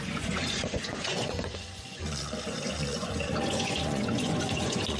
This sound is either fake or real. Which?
fake